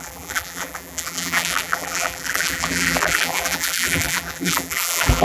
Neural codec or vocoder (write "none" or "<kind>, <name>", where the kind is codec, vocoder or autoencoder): vocoder, BigVGAN v2